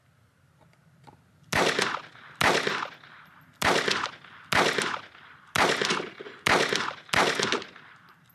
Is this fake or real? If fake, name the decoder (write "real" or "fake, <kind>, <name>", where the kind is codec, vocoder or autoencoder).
real